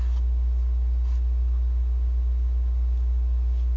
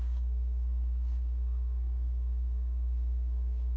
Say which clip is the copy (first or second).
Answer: second